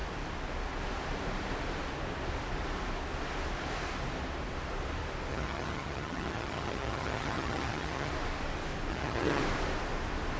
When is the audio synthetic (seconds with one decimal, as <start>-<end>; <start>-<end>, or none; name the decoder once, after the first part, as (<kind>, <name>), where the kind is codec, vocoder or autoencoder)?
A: 5.3-8.1 (vocoder, HiFi-GAN); 8.9-9.4